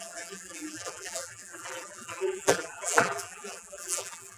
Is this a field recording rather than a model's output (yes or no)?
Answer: no